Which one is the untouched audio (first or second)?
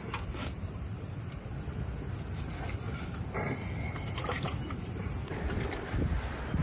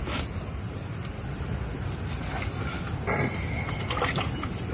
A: second